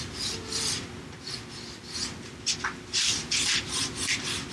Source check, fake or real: real